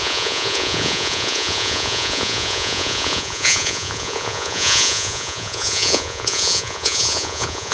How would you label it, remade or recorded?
remade